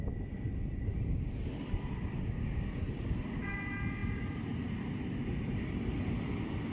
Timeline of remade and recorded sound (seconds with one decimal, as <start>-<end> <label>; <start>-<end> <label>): 0.0-6.7 recorded